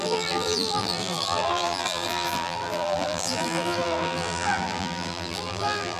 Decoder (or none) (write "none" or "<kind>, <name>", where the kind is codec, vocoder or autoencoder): vocoder, BigVGAN v2